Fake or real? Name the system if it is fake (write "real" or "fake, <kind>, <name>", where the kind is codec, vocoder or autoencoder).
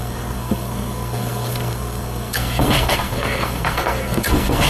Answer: fake, codec, SNAC